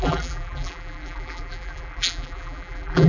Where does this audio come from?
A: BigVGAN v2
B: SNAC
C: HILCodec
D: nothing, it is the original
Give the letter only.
A